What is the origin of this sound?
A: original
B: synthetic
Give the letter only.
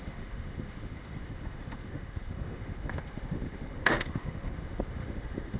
B